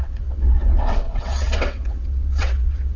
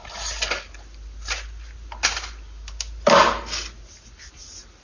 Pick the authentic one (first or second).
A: second